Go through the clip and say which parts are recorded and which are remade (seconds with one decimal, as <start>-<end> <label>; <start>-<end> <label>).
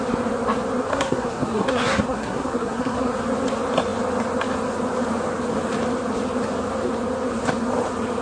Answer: 0.0-0.9 recorded; 0.9-3.1 remade; 3.1-8.2 recorded